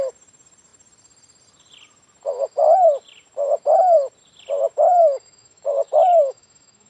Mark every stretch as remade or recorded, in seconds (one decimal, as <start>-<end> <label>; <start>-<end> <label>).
0.0-5.0 recorded; 5.0-6.9 remade